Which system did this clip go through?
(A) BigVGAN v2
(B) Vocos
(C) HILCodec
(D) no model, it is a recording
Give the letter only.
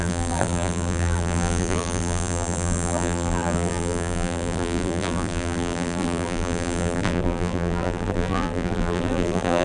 A